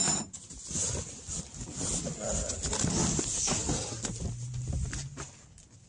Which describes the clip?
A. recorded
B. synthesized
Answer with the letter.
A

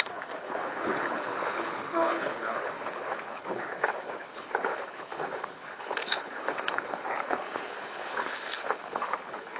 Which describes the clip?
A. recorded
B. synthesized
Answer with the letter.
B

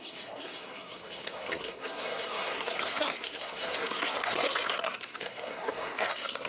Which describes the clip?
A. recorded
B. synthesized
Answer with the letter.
B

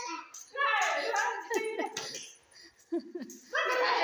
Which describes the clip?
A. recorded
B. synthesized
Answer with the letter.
A